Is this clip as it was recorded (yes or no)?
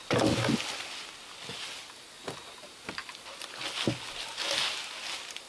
yes